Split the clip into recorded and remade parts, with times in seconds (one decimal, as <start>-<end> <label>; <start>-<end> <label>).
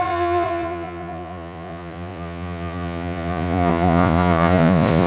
0.0-5.1 remade